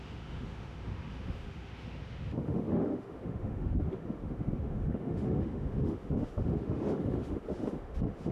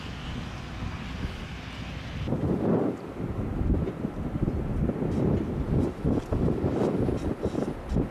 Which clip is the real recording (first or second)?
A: second